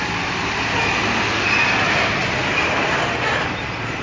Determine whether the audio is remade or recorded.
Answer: recorded